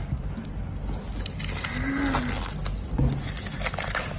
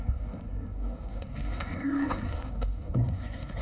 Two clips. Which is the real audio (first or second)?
first